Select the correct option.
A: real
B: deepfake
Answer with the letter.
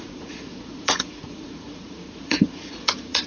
B